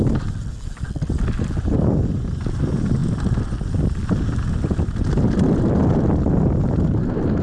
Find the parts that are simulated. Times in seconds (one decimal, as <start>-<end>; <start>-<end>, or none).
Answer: none